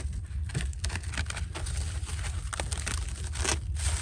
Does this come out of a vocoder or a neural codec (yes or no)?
no